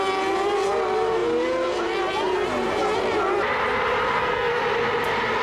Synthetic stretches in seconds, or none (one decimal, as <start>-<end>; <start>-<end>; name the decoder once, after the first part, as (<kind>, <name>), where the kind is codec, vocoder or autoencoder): 4.1-4.6 (codec, SNAC)